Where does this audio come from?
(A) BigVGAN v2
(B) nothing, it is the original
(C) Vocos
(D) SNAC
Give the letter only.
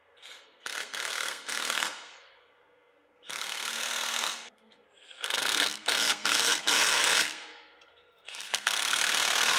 D